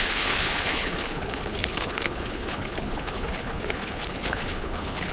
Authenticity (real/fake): fake